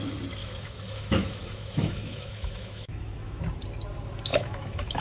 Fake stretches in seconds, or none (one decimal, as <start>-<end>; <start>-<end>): 0.4-3.4; 4.3-5.0